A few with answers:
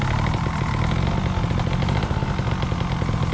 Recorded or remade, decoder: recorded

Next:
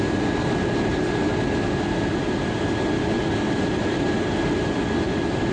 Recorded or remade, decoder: recorded